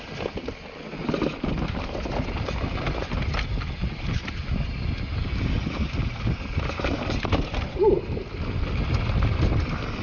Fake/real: real